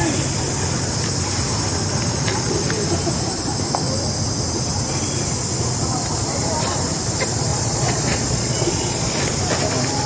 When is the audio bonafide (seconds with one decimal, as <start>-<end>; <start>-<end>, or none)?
0.0-7.5; 9.1-10.1